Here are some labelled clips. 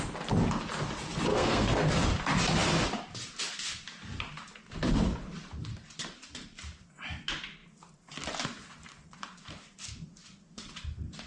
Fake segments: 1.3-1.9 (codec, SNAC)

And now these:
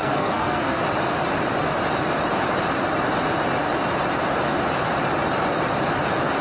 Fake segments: 0.0-0.8 (codec, SNAC)

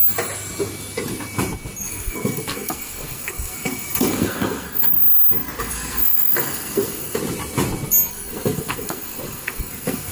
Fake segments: 1.8-5.0 (codec, SNAC); 5.6-7.2; 8.1-10.1

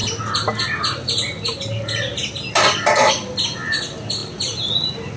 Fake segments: none

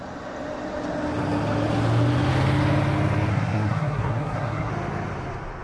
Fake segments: 3.3-4.7 (codec, SNAC)

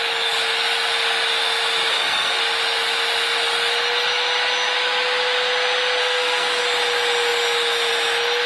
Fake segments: 1.9-2.4 (codec, SNAC); 6.0-6.6

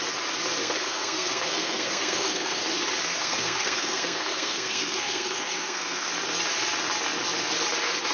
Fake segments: 0.6-2.6 (codec, SNAC); 3.2-6.1